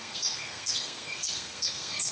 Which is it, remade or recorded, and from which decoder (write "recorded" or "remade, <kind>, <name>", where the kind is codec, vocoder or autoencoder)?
remade, codec, SNAC